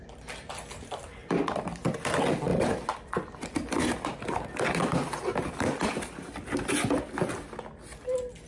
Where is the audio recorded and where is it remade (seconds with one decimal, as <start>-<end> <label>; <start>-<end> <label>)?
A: 0.0-1.2 recorded; 1.2-2.1 remade; 2.1-2.5 recorded; 2.5-4.8 remade; 4.8-8.5 recorded